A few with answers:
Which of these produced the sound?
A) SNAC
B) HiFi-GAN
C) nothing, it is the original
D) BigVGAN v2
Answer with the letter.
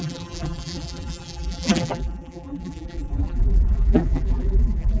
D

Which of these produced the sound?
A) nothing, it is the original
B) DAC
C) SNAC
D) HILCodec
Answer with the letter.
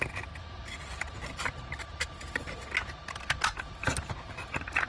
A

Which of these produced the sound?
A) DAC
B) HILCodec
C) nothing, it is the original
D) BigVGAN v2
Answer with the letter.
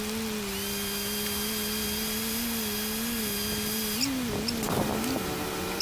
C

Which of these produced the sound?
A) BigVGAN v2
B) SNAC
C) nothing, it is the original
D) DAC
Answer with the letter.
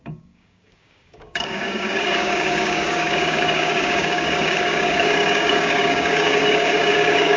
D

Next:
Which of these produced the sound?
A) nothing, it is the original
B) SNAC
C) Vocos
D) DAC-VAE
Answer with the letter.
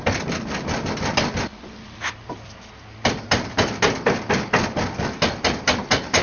A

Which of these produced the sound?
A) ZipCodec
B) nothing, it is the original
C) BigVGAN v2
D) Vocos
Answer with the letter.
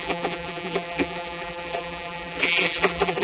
C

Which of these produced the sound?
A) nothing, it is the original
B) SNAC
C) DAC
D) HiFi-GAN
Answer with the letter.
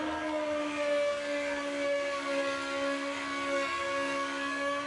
C